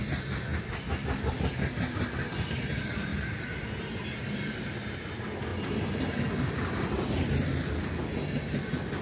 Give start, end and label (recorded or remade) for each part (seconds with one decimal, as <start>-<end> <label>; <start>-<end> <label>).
0.0-9.0 recorded